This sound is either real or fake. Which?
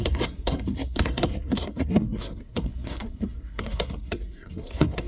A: fake